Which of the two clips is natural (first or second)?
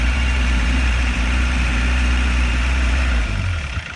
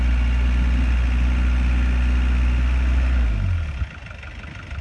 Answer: second